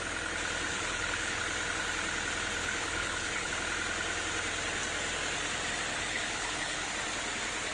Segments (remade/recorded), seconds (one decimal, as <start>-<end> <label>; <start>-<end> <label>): 0.0-0.7 recorded; 0.7-1.4 remade; 1.4-2.6 recorded; 2.6-3.5 remade; 3.5-5.9 recorded; 5.9-6.9 remade; 6.9-7.7 recorded